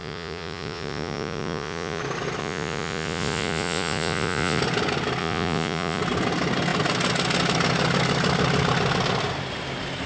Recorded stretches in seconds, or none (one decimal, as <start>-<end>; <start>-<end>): 2.0-2.4; 4.6-5.2; 6.0-10.1